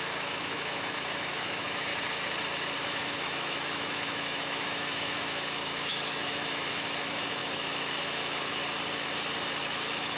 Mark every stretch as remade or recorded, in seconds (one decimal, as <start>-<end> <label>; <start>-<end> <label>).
0.0-1.9 remade; 1.9-2.8 recorded; 2.8-8.6 remade; 8.6-9.6 recorded; 9.6-10.2 remade